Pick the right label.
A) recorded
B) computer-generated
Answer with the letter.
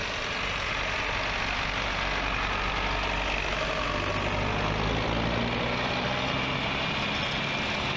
A